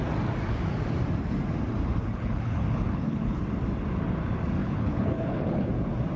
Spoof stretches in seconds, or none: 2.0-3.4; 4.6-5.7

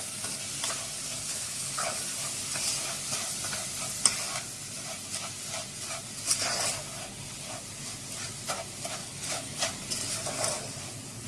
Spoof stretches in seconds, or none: 1.3-2.0; 9.0-9.6

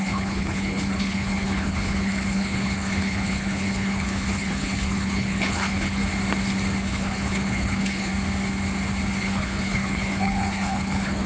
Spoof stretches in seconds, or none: 0.0-6.0; 6.8-8.1; 9.2-11.3

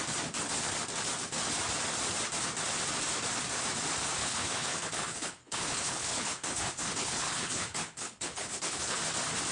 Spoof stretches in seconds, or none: 4.2-9.0

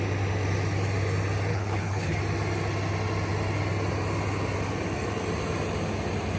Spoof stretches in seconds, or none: 1.5-2.2

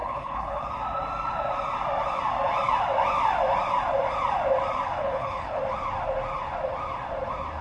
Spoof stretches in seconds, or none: 0.0-0.7; 5.0-5.6